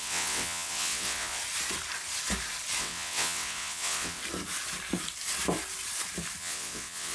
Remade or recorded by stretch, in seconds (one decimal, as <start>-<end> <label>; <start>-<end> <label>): 0.0-1.4 remade; 1.4-2.8 recorded; 2.8-4.2 remade; 4.2-6.4 recorded; 6.4-7.1 remade